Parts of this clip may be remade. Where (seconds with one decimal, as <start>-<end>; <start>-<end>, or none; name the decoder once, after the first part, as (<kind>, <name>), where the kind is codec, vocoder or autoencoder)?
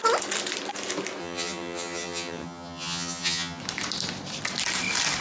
1.2-3.6 (vocoder, HiFi-GAN)